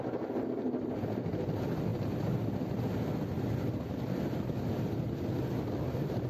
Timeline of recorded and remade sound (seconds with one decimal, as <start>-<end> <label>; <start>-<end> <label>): 0.0-6.3 recorded